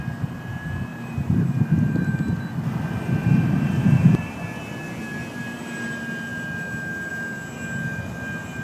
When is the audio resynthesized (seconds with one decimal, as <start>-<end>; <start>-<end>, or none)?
0.9-1.6; 3.2-4.3